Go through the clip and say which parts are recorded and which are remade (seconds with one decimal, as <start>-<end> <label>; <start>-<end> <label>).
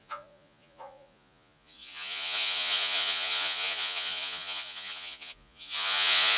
0.0-6.4 remade